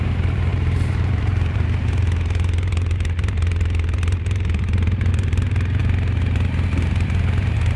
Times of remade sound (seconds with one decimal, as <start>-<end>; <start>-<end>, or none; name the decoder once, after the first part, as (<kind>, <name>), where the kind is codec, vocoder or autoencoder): 0.0-5.8 (vocoder, BigVGAN v2); 6.9-7.8